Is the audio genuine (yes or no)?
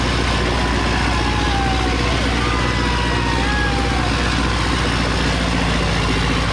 yes